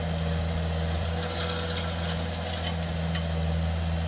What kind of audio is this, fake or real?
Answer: real